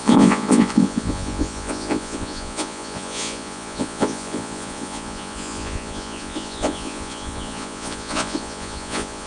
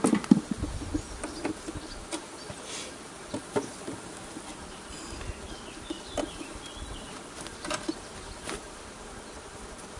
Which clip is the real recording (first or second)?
second